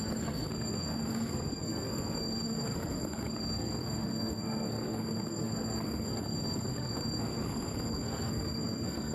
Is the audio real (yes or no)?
no